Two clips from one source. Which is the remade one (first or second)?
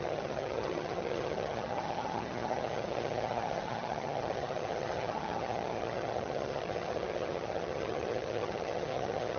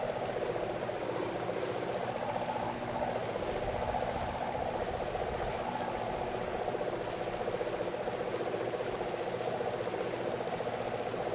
first